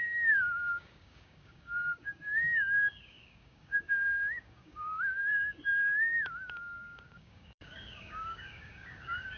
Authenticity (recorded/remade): remade